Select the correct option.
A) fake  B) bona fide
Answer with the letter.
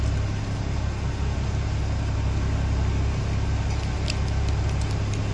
B